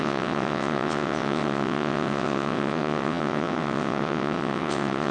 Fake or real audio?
fake